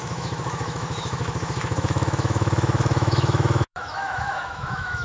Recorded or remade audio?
remade